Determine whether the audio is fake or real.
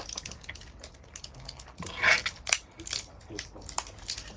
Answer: real